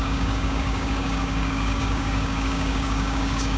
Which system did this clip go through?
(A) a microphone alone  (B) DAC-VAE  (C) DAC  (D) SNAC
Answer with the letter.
C